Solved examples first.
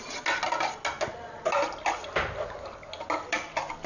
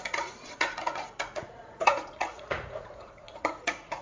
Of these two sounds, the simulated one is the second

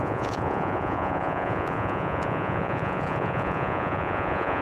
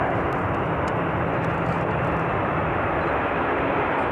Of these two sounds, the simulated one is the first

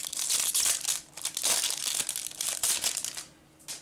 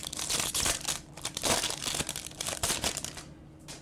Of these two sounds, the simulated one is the second